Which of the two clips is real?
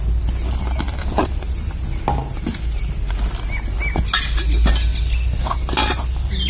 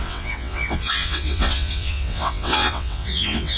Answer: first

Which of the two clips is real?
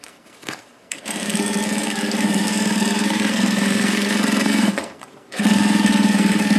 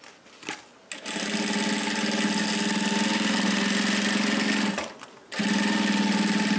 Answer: second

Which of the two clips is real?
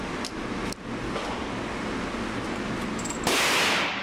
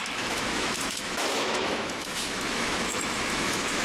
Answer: first